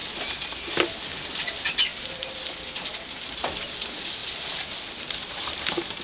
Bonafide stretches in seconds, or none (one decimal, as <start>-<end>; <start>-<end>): 0.0-6.0